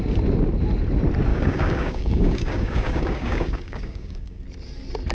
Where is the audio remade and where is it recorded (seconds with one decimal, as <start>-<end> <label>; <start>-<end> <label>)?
0.0-1.3 recorded; 1.3-4.4 remade; 4.4-5.1 recorded